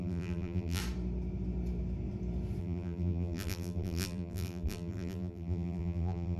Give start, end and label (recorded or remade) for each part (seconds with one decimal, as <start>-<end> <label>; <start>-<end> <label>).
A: 0.0-0.8 remade; 0.8-2.6 recorded; 2.6-6.4 remade